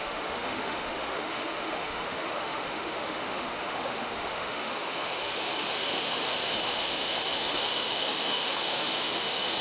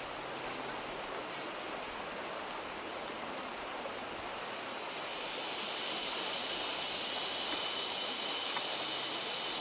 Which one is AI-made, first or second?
first